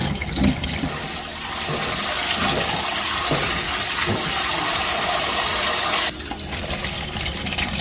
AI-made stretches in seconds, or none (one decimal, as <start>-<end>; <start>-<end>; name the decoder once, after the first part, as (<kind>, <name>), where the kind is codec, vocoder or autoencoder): none